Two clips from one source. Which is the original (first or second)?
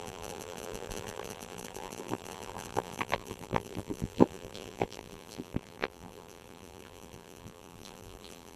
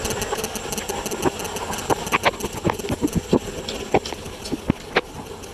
second